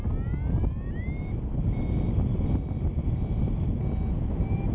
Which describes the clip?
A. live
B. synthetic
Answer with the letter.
A